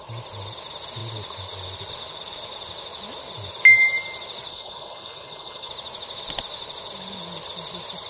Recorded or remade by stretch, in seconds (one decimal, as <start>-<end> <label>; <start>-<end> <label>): 0.0-4.5 recorded; 4.5-5.7 remade; 5.7-8.1 recorded

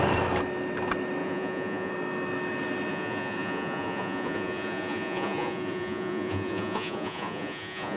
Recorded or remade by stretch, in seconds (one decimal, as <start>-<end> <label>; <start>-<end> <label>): 0.0-1.2 recorded; 1.2-1.9 remade; 1.9-2.9 recorded; 2.9-8.0 remade

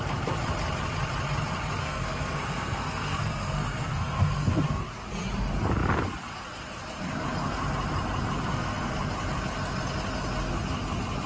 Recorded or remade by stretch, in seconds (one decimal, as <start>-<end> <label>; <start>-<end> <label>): 0.0-1.8 recorded; 1.8-4.8 remade; 4.8-8.5 recorded; 8.5-9.0 remade; 9.0-11.3 recorded

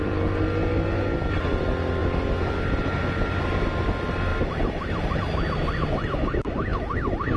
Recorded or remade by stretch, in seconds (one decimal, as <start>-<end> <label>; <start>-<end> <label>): 0.0-7.4 recorded